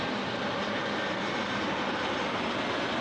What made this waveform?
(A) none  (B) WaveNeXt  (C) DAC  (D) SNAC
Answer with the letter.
A